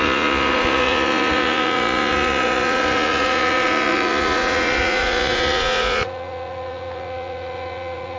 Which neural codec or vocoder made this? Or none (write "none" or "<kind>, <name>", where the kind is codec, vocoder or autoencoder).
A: vocoder, Vocos